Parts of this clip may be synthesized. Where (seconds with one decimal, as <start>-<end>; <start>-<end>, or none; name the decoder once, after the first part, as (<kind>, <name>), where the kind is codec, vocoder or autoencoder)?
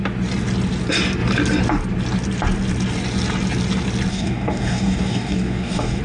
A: 4.1-6.0 (codec, DAC)